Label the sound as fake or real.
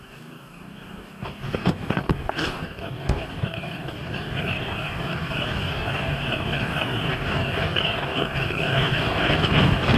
fake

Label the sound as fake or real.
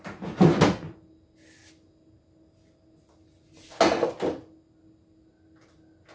real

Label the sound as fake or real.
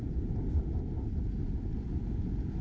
real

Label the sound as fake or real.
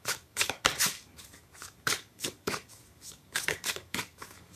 fake